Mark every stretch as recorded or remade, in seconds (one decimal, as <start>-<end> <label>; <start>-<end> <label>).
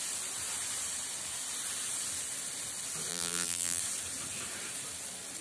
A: 0.0-3.1 recorded; 3.1-3.8 remade; 3.8-5.4 recorded